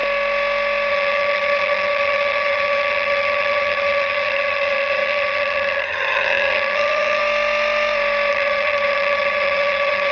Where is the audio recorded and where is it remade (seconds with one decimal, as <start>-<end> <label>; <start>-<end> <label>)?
0.0-0.9 recorded; 0.9-7.2 remade; 7.2-8.3 recorded; 8.3-10.1 remade

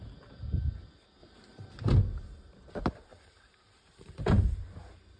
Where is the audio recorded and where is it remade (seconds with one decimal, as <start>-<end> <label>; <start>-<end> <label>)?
0.0-1.2 recorded; 1.2-1.9 remade; 1.9-3.1 recorded; 3.1-4.5 remade; 4.5-5.2 recorded